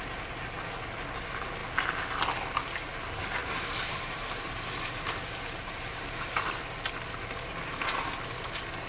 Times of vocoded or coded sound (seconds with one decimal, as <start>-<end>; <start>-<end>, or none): 3.4-6.6